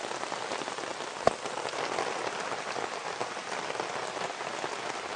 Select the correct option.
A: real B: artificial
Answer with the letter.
A